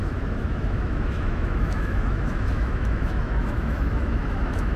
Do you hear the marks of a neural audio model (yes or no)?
yes